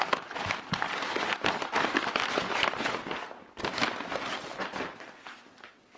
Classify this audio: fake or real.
real